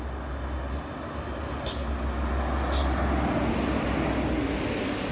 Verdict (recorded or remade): recorded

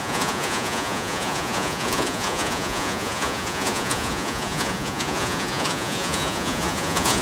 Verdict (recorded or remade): remade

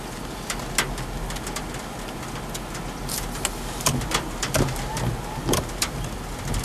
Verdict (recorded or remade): recorded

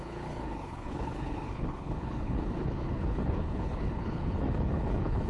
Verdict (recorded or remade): remade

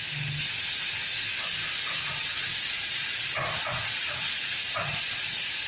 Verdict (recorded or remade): recorded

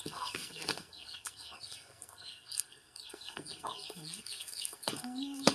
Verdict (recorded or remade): remade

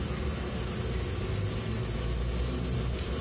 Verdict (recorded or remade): recorded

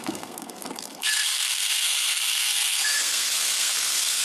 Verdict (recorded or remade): remade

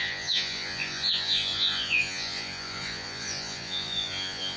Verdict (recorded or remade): remade